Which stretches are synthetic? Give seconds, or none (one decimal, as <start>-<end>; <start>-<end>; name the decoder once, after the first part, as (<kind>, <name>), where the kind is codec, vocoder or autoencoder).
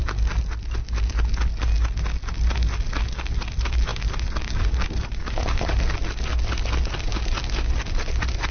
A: 3.9-5.7 (vocoder, BigVGAN v2)